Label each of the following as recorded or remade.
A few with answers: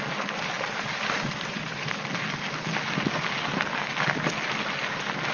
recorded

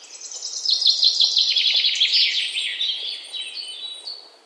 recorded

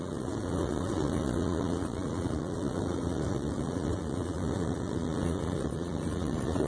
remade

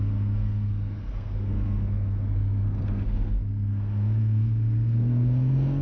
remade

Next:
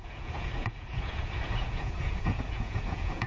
remade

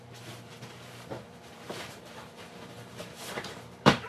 remade